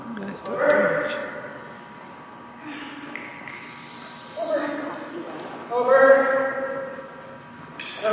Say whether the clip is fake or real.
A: real